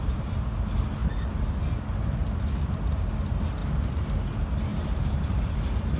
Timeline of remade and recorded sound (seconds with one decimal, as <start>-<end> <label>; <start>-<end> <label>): 0.0-3.6 recorded; 3.6-4.2 remade; 4.2-4.7 recorded; 4.7-6.0 remade